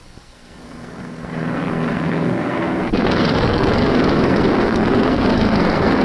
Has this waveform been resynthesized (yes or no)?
yes